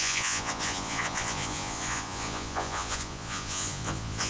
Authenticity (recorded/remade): remade